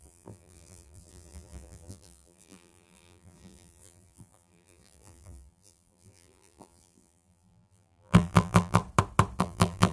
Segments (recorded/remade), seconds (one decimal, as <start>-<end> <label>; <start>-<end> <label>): 0.0-8.8 remade; 8.8-9.4 recorded; 9.4-9.9 remade